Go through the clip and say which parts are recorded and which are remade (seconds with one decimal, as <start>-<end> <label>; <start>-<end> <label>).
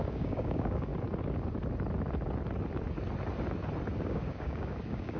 0.0-0.9 remade; 0.9-4.0 recorded; 4.0-5.2 remade